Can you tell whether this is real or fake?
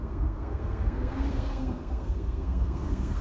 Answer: fake